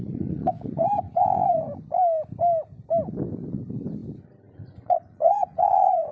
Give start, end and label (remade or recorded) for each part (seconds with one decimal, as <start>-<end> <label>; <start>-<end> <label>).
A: 0.0-1.7 remade; 1.7-4.5 recorded; 4.5-6.1 remade